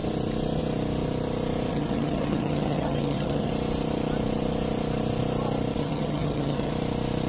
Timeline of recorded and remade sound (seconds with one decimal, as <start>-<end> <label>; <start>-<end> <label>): 0.0-1.7 recorded; 1.7-3.5 remade; 3.5-5.8 recorded; 5.8-6.7 remade; 6.7-7.3 recorded